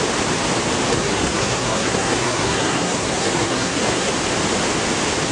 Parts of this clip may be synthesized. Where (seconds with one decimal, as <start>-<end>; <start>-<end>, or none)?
0.9-4.1